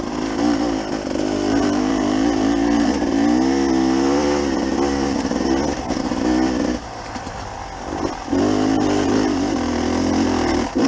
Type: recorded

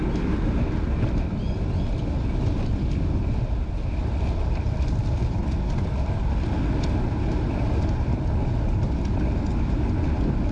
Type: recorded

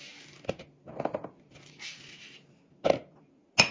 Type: recorded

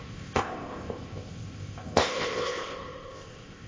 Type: remade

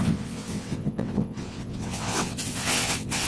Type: remade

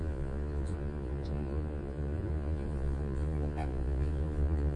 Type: remade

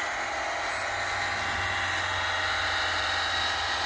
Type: recorded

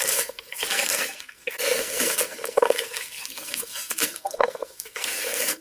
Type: remade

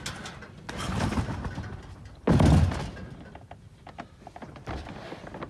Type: recorded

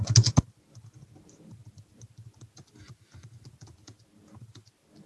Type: recorded